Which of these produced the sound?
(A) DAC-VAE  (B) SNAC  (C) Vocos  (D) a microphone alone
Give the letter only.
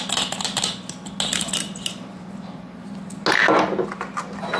D